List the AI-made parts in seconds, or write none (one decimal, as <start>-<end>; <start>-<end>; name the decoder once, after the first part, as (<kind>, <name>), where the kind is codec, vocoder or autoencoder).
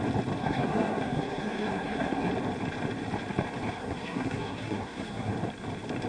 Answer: 0.4-2.3 (codec, SNAC); 3.8-5.3